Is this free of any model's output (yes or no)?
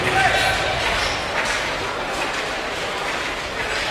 yes